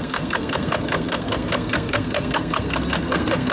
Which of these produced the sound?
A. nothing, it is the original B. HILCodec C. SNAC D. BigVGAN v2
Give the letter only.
C